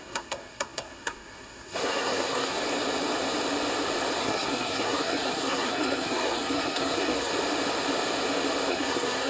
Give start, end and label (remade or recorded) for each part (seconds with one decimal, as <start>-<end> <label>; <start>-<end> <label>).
0.0-2.6 remade; 2.6-4.2 recorded; 4.2-7.3 remade; 7.3-8.7 recorded; 8.7-9.3 remade